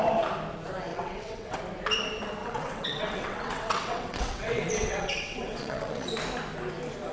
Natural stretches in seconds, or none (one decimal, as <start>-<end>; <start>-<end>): 0.0-0.9; 1.6-2.4; 6.1-7.1